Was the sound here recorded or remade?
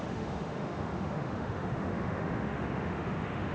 remade